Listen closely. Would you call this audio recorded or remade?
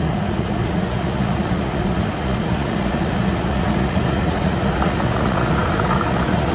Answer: remade